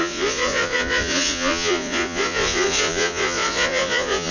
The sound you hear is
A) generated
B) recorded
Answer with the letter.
A